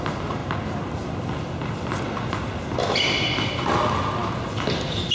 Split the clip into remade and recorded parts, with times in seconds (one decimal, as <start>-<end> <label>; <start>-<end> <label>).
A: 0.0-5.1 recorded

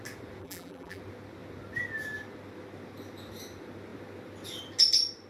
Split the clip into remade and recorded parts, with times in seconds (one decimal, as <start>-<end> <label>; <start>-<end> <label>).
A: 0.0-0.4 recorded; 0.4-1.0 remade; 1.0-5.3 recorded

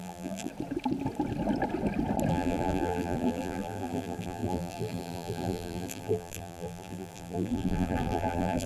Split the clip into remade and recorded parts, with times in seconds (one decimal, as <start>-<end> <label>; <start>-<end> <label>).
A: 0.0-0.5 remade; 0.5-2.3 recorded; 2.3-8.7 remade

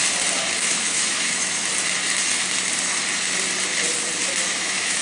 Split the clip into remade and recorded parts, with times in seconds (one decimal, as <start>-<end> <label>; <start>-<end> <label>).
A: 0.0-0.6 recorded; 0.6-1.6 remade; 1.6-4.6 recorded; 4.6-5.0 remade

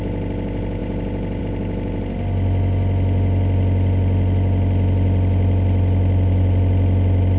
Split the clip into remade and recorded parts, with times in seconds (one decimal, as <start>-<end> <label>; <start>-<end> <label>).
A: 0.0-7.4 recorded

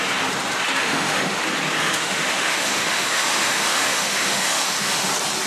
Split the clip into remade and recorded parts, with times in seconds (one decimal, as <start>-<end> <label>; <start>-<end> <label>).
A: 0.0-0.8 recorded; 0.8-1.4 remade; 1.4-1.8 recorded; 1.8-5.1 remade; 5.1-5.5 recorded

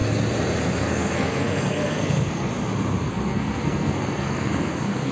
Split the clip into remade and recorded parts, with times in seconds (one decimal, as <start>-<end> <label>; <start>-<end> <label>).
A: 0.0-0.8 recorded; 0.8-2.5 remade; 2.5-3.0 recorded; 3.0-5.1 remade

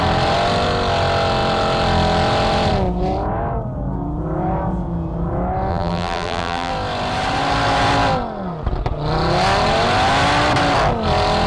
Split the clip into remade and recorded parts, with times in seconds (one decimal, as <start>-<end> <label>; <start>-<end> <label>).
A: 0.0-5.7 recorded; 5.7-6.7 remade; 6.7-11.5 recorded